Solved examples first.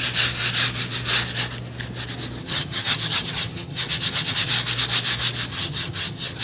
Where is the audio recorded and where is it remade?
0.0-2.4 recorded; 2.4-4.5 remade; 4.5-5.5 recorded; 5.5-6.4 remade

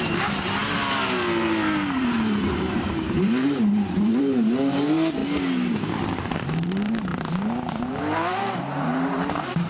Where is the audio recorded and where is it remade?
0.0-5.2 remade; 5.2-6.2 recorded; 6.2-9.7 remade

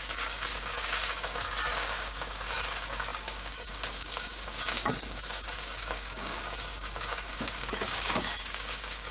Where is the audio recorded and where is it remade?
0.0-9.1 remade

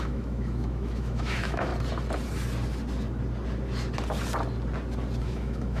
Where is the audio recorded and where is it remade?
0.0-1.7 remade; 1.7-5.2 recorded; 5.2-5.8 remade

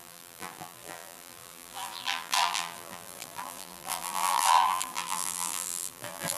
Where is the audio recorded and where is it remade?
0.0-6.4 remade